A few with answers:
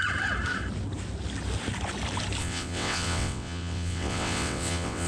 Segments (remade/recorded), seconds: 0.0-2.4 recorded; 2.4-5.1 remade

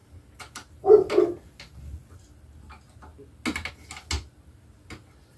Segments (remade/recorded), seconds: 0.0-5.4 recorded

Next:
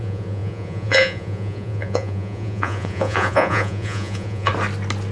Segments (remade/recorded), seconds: 0.0-4.5 remade; 4.5-5.1 recorded